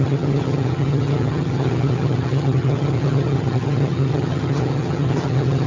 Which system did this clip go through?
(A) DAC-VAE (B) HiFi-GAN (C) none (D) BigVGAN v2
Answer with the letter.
B